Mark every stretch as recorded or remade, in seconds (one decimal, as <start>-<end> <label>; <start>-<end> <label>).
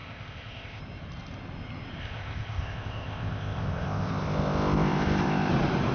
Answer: 0.0-0.8 remade; 0.8-2.0 recorded; 2.0-5.5 remade; 5.5-5.9 recorded